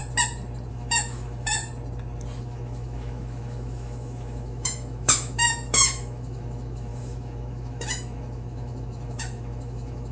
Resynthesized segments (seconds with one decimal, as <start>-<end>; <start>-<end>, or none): 0.7-1.6; 2.4-10.1